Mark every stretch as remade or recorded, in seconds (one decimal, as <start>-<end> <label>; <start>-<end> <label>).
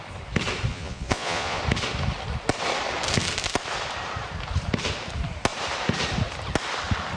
0.0-0.7 recorded; 0.7-1.6 remade; 1.6-7.2 recorded